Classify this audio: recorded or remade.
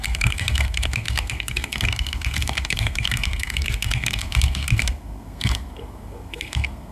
remade